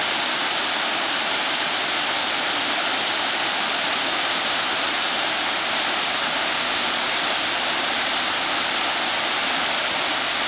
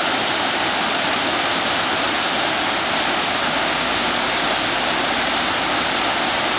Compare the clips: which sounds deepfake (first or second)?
first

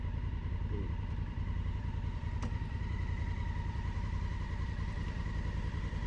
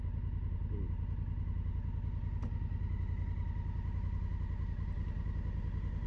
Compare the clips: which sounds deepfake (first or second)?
first